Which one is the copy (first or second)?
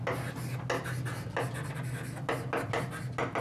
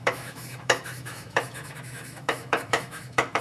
second